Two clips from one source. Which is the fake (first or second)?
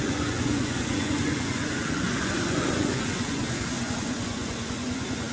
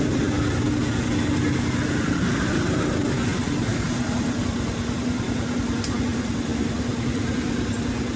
first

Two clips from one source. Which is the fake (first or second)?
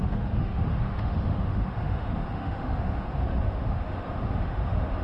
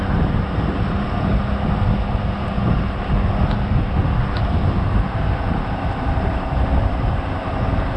first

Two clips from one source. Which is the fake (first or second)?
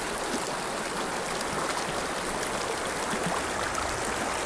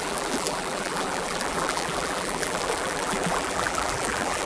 second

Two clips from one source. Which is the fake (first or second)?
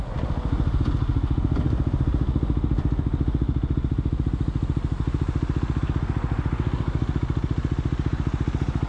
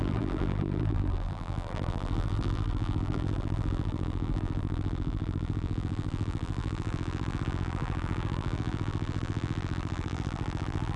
second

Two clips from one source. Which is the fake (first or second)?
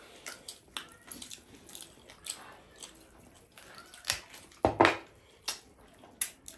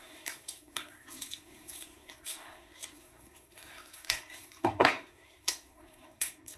second